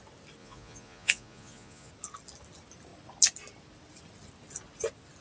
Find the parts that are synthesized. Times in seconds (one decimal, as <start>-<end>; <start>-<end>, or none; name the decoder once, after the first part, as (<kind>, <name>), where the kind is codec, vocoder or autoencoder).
0.4-1.9 (vocoder, Vocos)